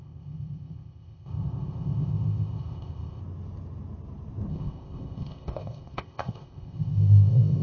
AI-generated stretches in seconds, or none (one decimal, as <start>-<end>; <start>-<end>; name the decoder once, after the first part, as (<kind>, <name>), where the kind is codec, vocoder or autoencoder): 0.0-3.2 (codec, ZipCodec); 4.5-7.6